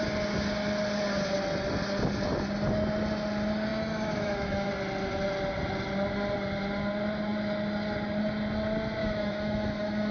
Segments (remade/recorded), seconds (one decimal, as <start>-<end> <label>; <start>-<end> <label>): 0.0-3.7 recorded; 3.7-4.7 remade; 4.7-9.0 recorded; 9.0-10.1 remade